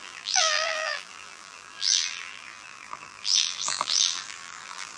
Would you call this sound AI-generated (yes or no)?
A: yes